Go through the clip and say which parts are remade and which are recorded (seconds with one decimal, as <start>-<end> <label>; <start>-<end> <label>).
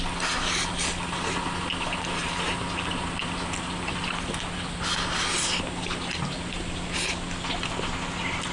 0.0-8.5 recorded